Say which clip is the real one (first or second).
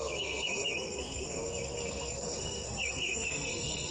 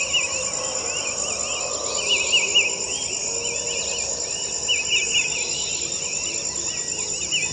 second